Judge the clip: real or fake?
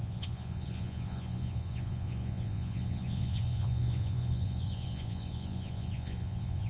fake